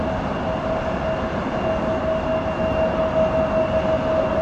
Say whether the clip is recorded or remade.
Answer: recorded